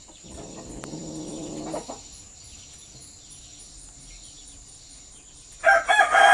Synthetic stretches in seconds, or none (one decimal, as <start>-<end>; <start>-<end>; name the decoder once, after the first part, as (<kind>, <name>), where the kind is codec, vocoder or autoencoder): none